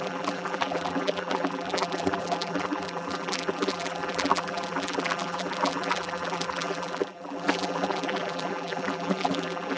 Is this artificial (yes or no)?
yes